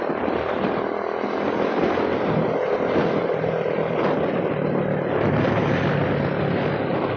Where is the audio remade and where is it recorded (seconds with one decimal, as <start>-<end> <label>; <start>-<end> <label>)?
0.0-3.2 recorded; 3.2-4.5 remade; 4.5-7.2 recorded